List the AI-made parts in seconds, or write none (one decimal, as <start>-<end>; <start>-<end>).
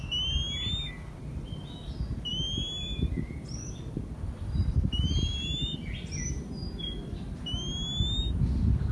4.6-5.4